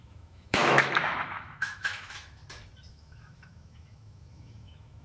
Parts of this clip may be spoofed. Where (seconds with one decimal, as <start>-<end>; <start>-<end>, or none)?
0.0-2.4; 2.9-5.0